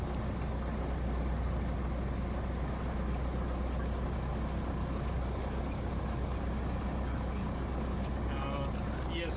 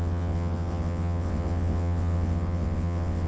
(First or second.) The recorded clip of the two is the first